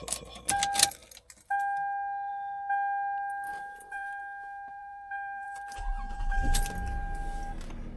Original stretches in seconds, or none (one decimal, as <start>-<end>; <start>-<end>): 0.0-3.5; 4.2-4.7; 6.5-8.0